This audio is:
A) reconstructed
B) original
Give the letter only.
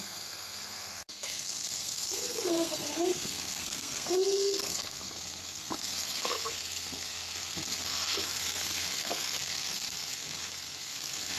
A